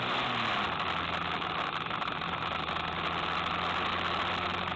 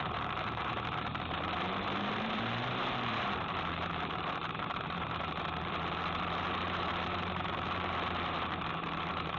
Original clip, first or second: first